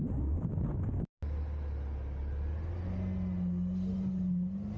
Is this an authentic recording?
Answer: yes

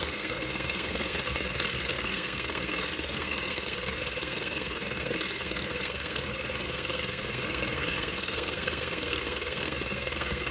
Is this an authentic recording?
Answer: no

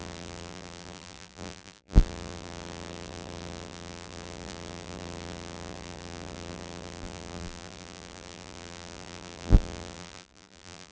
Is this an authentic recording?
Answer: no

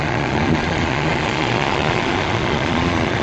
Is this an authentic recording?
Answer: no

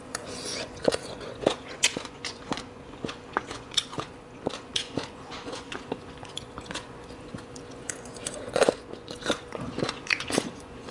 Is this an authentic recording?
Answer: no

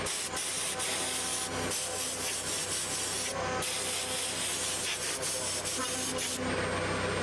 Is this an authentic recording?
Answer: yes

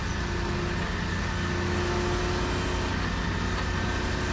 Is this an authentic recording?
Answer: yes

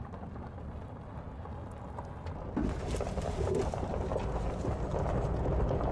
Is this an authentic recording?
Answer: yes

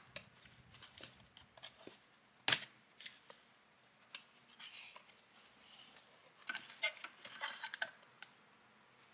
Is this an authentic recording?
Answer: yes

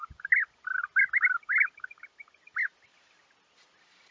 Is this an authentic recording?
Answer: yes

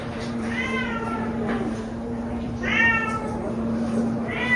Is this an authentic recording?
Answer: no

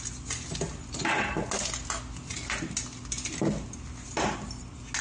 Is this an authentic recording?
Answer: yes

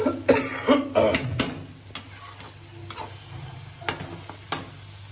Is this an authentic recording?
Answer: yes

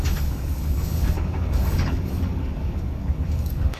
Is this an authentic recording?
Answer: no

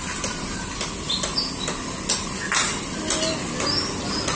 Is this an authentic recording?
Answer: yes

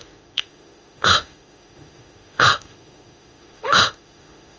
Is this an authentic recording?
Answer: no